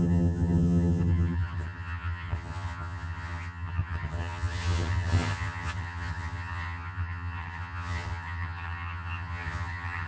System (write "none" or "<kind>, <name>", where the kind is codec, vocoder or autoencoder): vocoder, HiFi-GAN